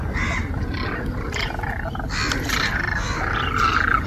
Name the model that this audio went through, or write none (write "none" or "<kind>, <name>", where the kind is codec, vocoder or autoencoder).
none